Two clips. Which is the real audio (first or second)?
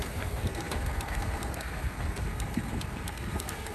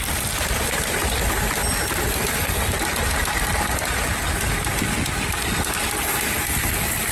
second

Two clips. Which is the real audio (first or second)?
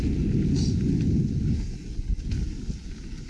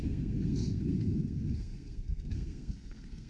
first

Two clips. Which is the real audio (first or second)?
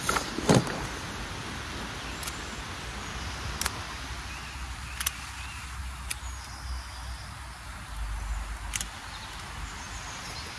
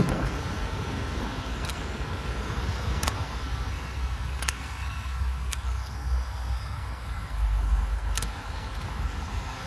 first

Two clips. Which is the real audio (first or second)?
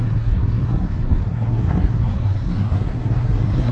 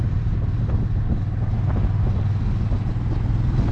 second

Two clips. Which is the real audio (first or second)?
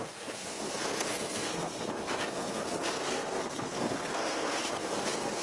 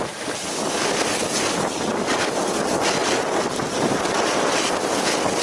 second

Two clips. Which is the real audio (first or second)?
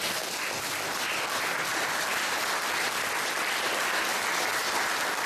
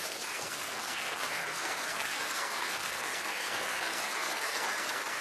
first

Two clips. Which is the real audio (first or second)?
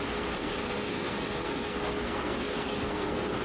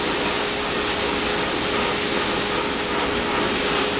second